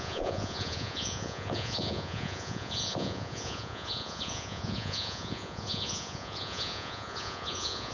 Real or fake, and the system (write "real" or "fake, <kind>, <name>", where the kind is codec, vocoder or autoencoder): fake, vocoder, Vocos